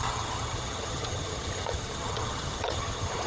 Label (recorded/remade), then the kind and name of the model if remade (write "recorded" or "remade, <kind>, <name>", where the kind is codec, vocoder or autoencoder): remade, vocoder, HiFi-GAN